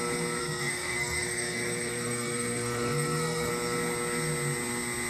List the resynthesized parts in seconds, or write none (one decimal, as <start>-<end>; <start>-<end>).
0.4-3.5